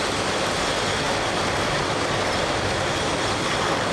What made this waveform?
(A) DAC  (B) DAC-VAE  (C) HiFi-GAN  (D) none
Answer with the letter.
D